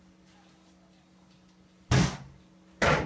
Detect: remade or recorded recorded